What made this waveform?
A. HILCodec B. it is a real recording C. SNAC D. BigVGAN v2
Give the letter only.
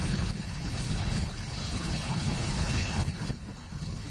A